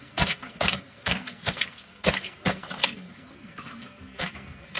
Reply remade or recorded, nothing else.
remade